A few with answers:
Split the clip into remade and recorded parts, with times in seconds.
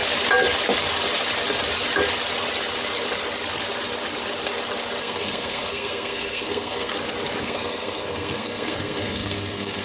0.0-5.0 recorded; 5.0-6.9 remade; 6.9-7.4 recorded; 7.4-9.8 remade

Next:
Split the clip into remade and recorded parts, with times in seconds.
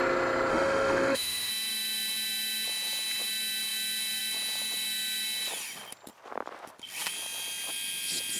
0.0-0.5 recorded; 0.5-1.5 remade; 1.5-8.4 recorded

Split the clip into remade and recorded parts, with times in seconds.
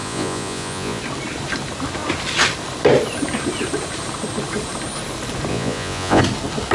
0.0-1.0 remade; 1.0-5.5 recorded; 5.5-6.2 remade; 6.2-6.7 recorded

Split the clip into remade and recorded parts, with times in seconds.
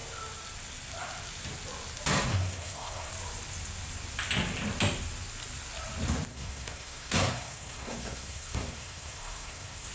0.0-2.3 recorded; 2.3-3.1 remade; 3.1-6.3 recorded; 6.3-9.9 remade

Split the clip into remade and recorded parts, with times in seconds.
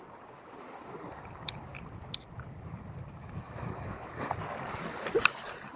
0.0-3.2 recorded; 3.2-4.3 remade; 4.3-5.8 recorded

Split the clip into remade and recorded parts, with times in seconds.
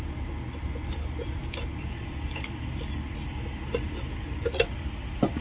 0.0-5.4 recorded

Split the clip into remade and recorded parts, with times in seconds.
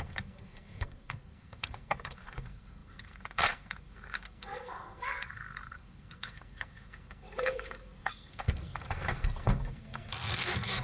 0.0-10.8 remade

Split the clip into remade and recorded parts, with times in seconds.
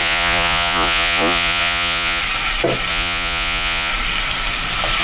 0.0-2.2 remade; 2.2-2.9 recorded; 2.9-3.9 remade; 3.9-5.0 recorded